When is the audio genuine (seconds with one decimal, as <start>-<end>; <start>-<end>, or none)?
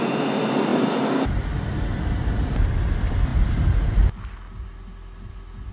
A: 0.0-5.7